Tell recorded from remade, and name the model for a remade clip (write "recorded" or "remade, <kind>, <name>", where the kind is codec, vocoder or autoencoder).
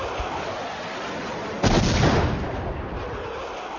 recorded